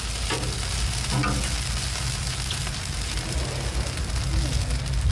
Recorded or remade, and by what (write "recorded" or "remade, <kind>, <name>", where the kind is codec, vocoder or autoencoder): recorded